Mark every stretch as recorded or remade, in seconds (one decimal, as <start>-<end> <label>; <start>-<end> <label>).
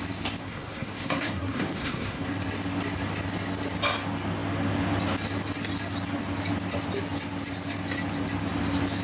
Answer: 0.0-0.4 recorded; 0.4-2.3 remade; 2.3-9.0 recorded